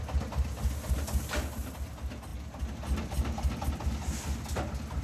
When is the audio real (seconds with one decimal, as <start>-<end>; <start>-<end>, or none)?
0.0-5.0

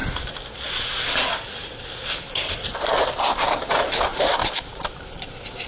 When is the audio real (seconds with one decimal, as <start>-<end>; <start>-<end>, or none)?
0.0-1.3; 2.9-3.4

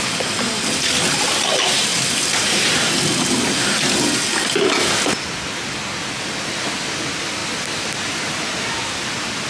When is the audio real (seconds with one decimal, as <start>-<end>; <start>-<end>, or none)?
0.0-9.5

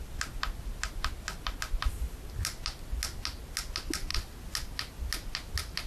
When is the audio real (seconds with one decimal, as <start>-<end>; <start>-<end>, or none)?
0.0-5.9

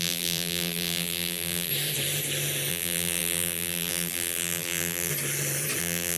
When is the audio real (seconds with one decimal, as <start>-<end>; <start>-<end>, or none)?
1.7-2.7; 5.1-5.8

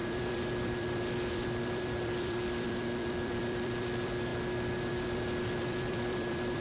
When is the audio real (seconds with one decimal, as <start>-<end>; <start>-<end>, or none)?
4.3-4.9

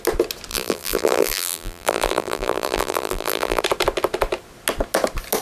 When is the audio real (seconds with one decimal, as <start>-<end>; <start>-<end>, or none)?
0.0-0.5; 3.6-5.4